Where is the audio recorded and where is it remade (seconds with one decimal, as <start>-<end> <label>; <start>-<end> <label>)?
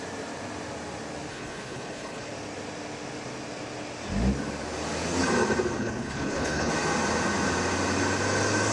0.0-1.3 recorded; 1.3-2.3 remade; 2.3-5.8 recorded; 5.8-6.7 remade; 6.7-8.7 recorded